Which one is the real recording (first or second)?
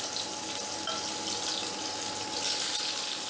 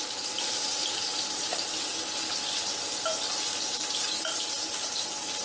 first